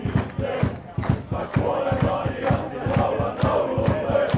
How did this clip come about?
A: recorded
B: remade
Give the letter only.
A